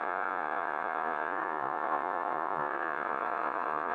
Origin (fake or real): fake